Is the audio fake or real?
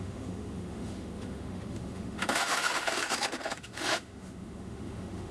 fake